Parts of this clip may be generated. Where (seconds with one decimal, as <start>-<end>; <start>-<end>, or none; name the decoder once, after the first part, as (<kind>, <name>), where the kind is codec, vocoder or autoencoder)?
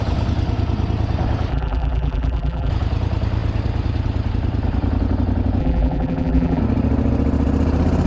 1.5-2.7 (vocoder, BigVGAN v2); 5.6-6.6